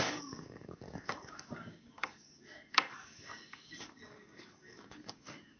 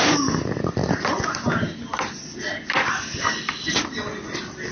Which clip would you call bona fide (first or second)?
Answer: second